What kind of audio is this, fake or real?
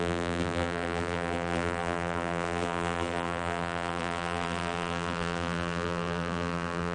fake